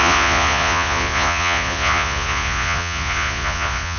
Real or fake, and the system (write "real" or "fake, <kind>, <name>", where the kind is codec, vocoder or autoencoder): fake, vocoder, Vocos